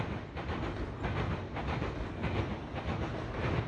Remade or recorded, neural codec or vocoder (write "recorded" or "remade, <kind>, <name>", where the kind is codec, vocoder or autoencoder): recorded